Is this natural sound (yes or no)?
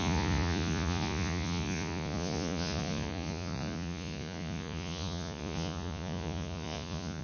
no